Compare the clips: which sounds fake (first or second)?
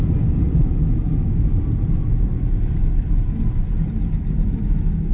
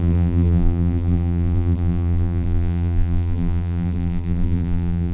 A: second